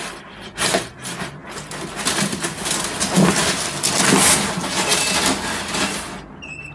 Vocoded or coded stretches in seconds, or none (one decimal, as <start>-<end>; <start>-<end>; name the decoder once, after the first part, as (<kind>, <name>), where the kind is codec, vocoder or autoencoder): none